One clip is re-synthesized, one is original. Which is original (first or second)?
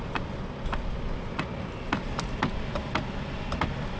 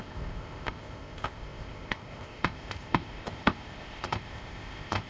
first